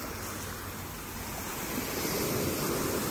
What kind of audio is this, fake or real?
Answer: real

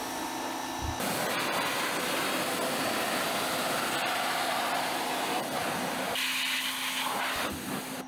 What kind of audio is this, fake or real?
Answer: real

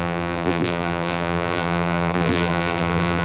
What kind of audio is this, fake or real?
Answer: fake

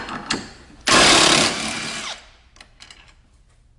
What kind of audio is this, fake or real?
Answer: real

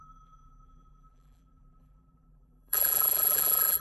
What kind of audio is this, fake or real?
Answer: fake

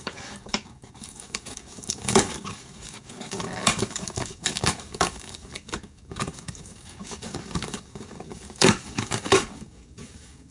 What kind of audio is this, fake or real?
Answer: fake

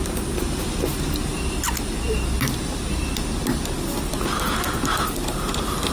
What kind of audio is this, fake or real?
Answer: real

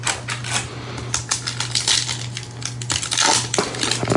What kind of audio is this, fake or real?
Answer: real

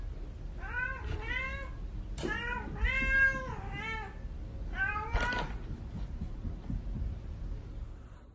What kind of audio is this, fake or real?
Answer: real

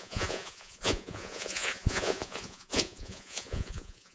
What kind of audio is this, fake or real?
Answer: fake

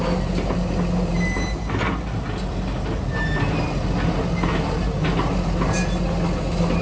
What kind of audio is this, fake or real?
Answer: real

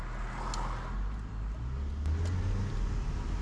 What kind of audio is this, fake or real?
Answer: real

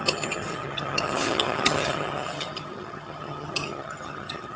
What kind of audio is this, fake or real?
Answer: fake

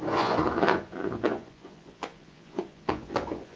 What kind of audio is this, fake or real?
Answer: fake